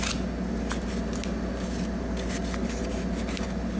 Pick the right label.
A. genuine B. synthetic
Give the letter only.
A